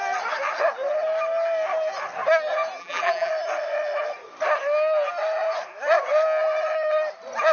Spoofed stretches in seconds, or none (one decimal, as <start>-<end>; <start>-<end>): 2.8-3.3